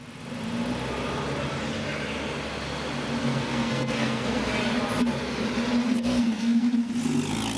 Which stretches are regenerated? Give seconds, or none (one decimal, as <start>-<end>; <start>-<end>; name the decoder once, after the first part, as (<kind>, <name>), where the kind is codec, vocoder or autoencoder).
3.2-4.4 (codec, SNAC); 5.8-6.9